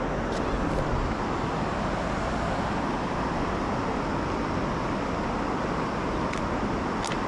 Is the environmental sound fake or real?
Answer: real